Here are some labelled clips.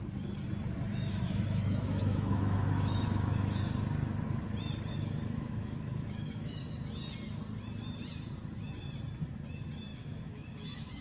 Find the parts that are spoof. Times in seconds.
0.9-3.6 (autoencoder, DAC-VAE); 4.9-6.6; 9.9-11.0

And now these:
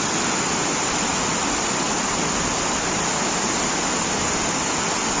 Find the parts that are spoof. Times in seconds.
none